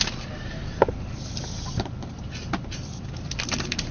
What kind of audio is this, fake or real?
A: real